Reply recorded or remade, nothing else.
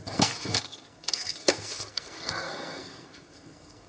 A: remade